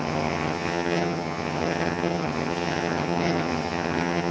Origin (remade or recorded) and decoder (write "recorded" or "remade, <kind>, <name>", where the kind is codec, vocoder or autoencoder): remade, vocoder, HiFi-GAN